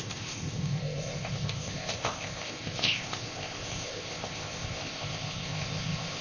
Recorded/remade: remade